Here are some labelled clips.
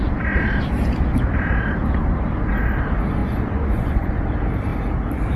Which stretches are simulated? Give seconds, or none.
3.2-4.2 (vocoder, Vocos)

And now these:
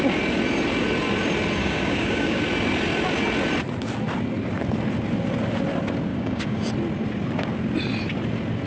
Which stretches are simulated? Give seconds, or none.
1.6-2.4 (codec, DAC); 6.1-6.7

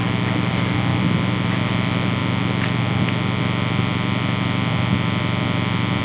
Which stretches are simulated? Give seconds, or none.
none

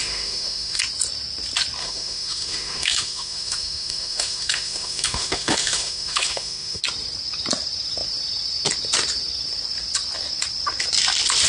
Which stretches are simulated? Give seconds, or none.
0.0-0.8 (autoencoder, DAC-VAE); 1.8-6.8

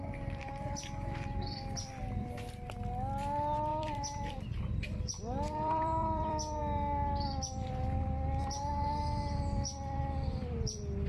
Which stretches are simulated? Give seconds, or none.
3.7-6.6 (vocoder, BigVGAN v2)

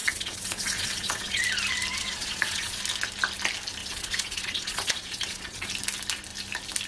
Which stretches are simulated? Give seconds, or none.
0.0-1.4 (vocoder, Vocos); 1.9-2.8; 3.8-5.7

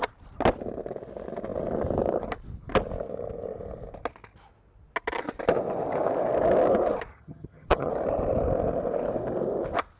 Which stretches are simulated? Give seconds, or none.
7.1-7.9 (vocoder, HiFi-GAN)

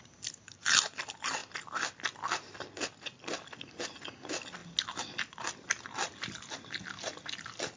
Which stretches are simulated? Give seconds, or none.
none